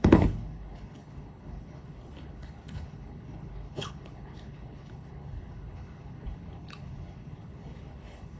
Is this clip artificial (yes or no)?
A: yes